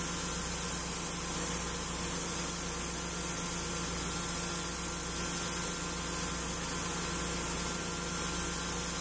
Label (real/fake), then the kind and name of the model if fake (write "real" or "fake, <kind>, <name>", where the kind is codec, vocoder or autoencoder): real